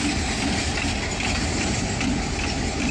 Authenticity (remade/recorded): recorded